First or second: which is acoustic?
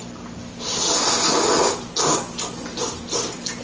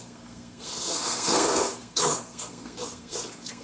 first